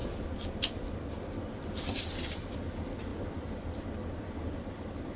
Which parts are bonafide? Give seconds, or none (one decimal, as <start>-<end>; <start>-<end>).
0.0-5.2